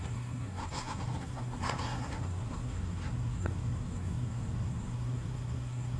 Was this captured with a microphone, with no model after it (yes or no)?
no